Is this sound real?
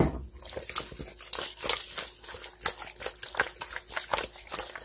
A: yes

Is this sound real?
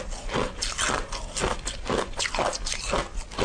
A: yes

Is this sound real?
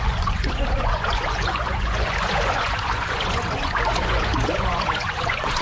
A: no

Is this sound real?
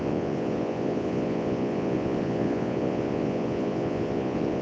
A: no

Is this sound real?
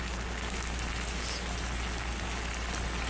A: yes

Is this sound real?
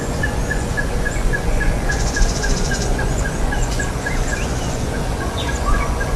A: no